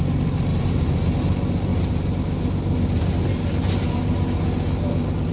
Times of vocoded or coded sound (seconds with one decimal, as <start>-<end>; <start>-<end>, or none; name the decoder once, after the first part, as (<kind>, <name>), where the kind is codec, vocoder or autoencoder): 0.5-1.2 (vocoder, BigVGAN v2)